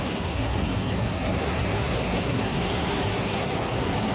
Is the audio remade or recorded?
remade